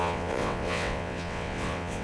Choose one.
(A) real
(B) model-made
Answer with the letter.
B